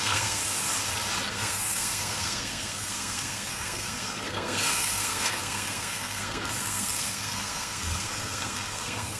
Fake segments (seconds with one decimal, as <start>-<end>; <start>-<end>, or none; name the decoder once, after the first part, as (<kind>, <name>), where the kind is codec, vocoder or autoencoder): 0.0-0.4 (codec, SNAC); 1.3-9.2